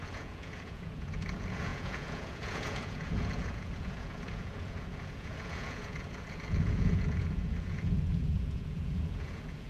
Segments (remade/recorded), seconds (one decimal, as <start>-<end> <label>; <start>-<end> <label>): 0.0-9.7 remade